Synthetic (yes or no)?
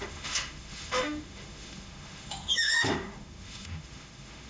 yes